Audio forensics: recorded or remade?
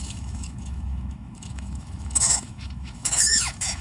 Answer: remade